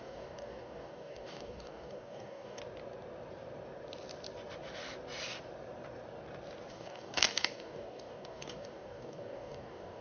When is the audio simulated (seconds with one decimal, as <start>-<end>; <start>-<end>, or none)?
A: 0.0-2.6; 6.7-10.0